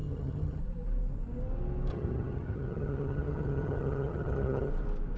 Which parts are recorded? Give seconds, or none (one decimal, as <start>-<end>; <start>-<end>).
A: 0.6-1.9; 4.7-5.2